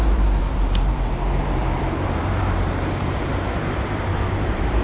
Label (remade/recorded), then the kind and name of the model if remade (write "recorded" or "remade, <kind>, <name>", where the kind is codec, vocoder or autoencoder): remade, vocoder, BigVGAN v2